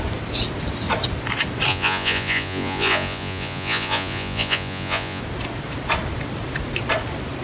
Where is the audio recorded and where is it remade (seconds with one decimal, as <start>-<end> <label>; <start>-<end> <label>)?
0.0-1.7 recorded; 1.7-5.2 remade; 5.2-7.4 recorded